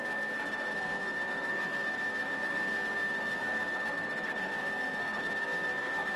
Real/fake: fake